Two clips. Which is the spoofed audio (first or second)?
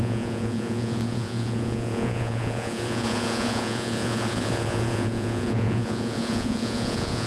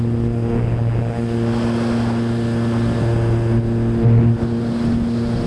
first